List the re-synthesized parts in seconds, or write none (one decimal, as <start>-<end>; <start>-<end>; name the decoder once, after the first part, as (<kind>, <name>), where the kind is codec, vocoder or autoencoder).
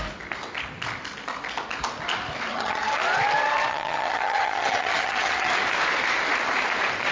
2.5-3.0 (vocoder, HiFi-GAN); 3.7-5.5